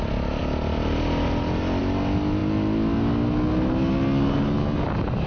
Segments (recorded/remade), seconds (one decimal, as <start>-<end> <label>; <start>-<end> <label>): 0.0-5.3 recorded